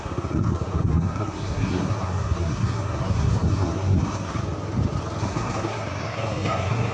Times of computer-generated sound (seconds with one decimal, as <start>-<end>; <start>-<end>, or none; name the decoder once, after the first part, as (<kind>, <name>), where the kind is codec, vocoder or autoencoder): 0.0-4.4 (codec, SNAC); 5.2-6.9